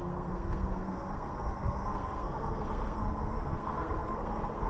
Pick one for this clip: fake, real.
fake